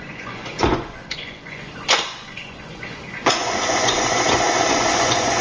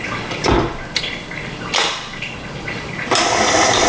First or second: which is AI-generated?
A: first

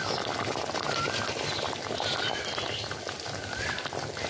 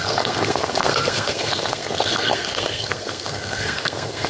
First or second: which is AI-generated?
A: second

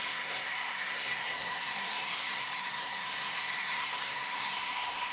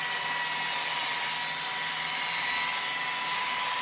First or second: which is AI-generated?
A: first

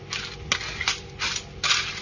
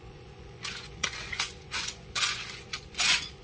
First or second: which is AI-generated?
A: second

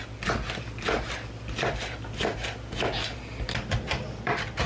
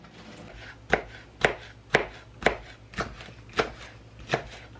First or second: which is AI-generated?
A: first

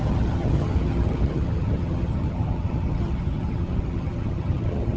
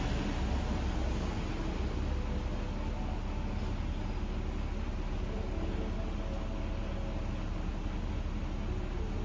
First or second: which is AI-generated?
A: first